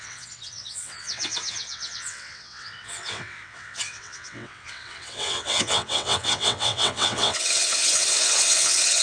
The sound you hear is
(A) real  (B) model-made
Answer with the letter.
B